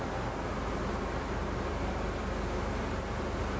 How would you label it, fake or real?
real